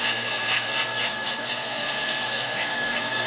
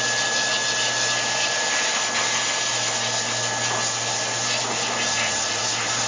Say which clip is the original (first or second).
second